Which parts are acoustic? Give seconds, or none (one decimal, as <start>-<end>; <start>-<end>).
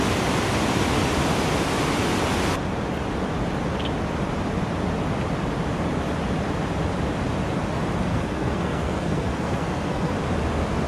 0.0-8.1; 10.1-10.9